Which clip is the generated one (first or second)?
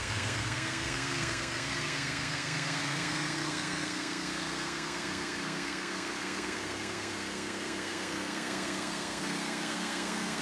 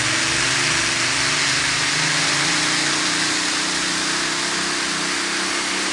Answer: first